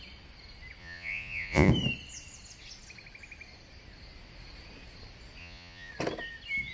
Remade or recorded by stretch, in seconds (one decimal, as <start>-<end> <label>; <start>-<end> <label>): 0.0-0.8 recorded; 0.8-1.7 remade; 1.7-5.4 recorded; 5.4-5.9 remade; 5.9-6.7 recorded